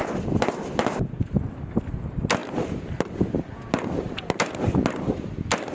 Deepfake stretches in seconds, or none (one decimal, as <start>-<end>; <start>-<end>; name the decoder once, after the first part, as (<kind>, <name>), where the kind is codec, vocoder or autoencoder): none